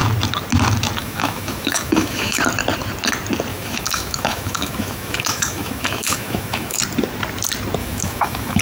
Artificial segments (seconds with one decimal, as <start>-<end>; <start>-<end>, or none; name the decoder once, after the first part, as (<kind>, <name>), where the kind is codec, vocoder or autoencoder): 1.0-2.4 (autoencoder, DAC-VAE); 3.5-6.8; 7.8-8.6